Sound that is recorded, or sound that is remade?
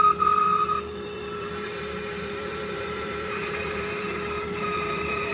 remade